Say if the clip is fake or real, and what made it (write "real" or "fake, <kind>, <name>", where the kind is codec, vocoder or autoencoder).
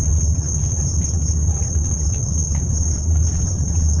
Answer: fake, vocoder, WaveNeXt